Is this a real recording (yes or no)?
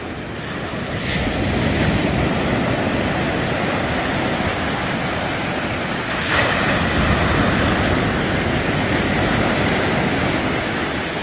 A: yes